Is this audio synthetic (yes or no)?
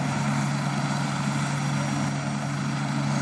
no